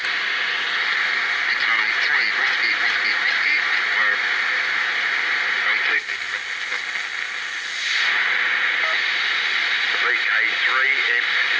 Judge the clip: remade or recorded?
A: recorded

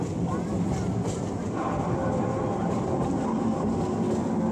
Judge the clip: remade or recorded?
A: recorded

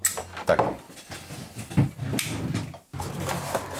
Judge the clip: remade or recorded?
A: recorded